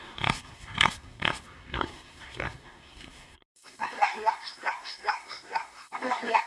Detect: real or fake fake